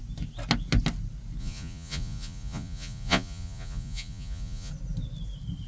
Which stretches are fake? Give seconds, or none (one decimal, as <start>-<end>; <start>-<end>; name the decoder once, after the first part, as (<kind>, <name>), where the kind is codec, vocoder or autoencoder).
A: 1.4-4.7 (vocoder, Vocos)